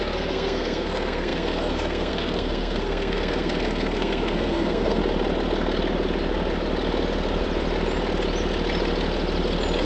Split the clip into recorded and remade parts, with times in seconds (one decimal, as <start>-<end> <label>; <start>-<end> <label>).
0.0-5.0 remade; 5.0-9.8 recorded